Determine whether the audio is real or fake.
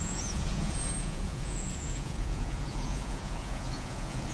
fake